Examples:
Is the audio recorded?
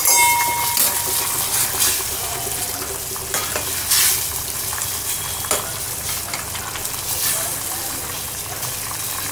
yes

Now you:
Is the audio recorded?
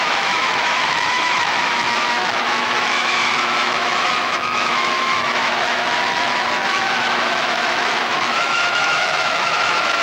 no